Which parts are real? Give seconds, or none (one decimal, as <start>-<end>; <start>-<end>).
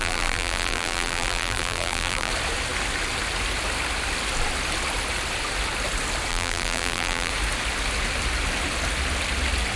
2.3-6.3; 7.3-9.8